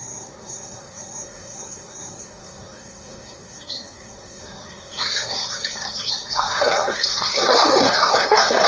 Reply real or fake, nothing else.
fake